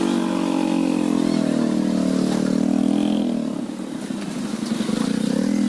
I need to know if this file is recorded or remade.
recorded